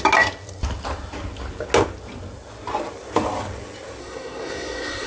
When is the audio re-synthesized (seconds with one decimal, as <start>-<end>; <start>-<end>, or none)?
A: 4.0-5.1